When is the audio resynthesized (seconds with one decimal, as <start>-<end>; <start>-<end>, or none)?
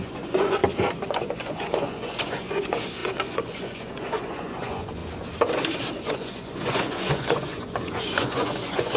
0.0-0.6; 1.1-5.0; 5.9-9.0